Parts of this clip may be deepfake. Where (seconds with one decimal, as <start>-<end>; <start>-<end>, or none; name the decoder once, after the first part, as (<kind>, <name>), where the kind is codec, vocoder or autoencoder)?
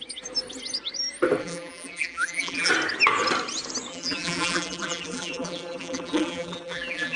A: 1.4-2.7 (vocoder, BigVGAN v2); 3.9-7.2